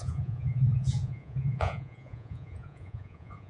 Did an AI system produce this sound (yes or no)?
yes